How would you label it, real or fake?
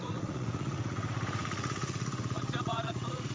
fake